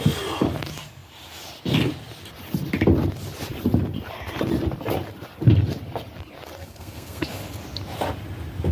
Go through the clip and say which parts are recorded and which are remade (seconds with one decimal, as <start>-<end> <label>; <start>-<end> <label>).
0.0-6.6 recorded; 6.6-7.2 remade; 7.2-8.7 recorded